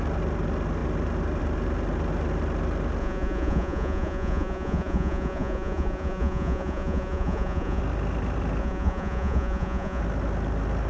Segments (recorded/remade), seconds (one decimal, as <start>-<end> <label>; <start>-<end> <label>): 0.0-3.0 recorded; 3.0-7.8 remade; 7.8-8.6 recorded; 8.6-10.0 remade; 10.0-10.9 recorded